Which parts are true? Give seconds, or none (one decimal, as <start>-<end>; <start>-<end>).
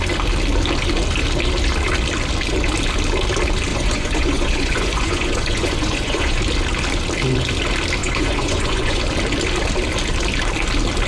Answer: 0.0-3.7; 6.4-8.0; 9.0-11.1